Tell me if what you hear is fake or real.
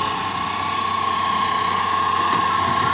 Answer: real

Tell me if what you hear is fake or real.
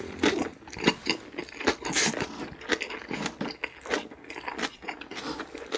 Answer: real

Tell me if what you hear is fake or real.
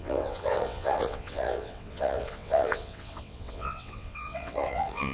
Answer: fake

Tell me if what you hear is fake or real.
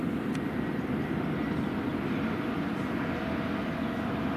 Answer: real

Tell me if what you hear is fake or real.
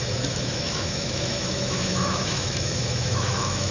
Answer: fake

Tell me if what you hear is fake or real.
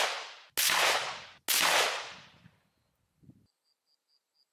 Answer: real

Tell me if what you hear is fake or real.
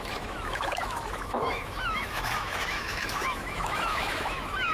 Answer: fake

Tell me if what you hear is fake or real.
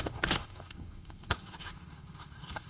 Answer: fake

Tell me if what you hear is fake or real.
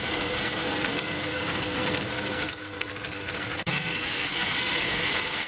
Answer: fake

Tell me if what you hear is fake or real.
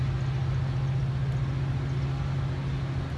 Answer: real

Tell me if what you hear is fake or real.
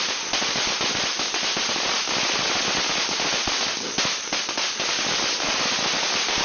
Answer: real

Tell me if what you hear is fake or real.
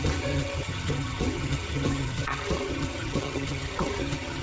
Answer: fake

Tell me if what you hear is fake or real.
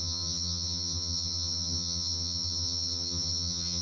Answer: fake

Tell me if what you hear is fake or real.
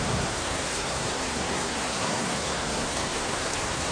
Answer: fake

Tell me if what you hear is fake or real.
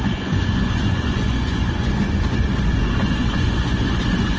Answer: fake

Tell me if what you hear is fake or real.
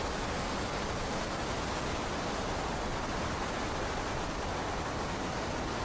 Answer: real